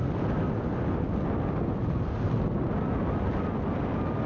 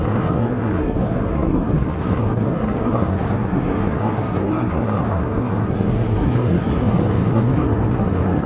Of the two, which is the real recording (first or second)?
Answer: first